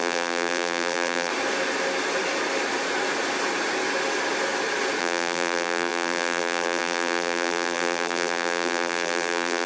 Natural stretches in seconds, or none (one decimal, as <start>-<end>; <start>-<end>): 1.3-5.0